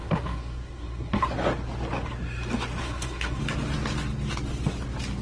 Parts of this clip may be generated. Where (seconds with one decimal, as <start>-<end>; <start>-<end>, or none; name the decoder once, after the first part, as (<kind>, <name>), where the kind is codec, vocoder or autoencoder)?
0.0-1.2 (codec, SNAC); 2.8-3.4